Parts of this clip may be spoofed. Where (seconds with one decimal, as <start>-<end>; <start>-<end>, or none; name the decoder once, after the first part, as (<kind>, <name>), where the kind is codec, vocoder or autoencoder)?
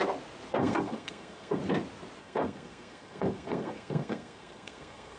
0.5-1.6 (codec, SNAC); 2.2-5.2